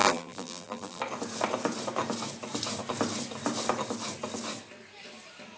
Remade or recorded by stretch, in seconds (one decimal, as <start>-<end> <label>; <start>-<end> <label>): 0.0-1.0 remade; 1.0-5.6 recorded